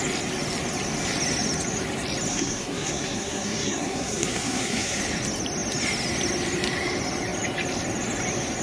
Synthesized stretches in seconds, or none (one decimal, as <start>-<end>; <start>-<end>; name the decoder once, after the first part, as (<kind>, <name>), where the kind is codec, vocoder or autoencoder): 2.3-5.0 (codec, SNAC)